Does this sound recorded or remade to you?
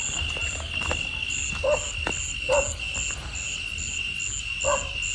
recorded